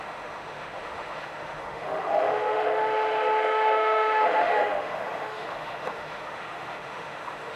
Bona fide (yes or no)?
no